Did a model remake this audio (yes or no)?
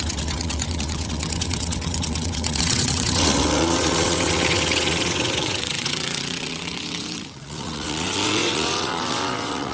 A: yes